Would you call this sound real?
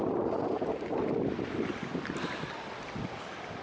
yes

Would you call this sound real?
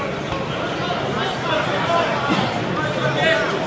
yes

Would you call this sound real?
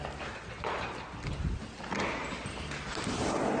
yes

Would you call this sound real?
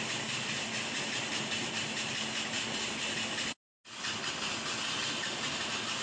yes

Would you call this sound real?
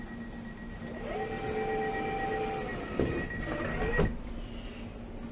yes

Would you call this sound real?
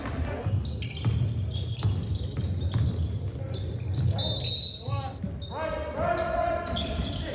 yes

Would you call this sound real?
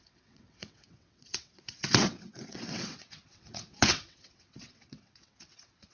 no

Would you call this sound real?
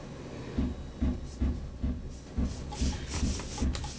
yes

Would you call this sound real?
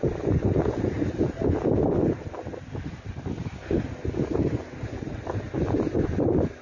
yes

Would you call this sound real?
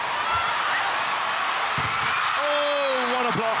yes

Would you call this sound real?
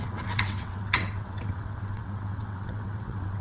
no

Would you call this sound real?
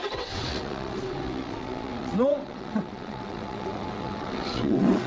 no